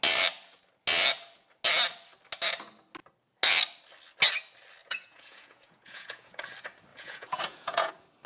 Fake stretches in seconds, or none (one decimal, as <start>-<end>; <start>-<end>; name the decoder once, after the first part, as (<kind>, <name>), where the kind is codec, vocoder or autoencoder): 4.8-6.4 (vocoder, Vocos); 6.9-7.9